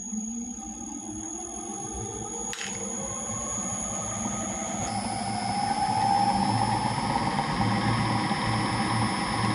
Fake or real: real